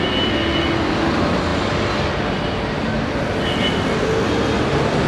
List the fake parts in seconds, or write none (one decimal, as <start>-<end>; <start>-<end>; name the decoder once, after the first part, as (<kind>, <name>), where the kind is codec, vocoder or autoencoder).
none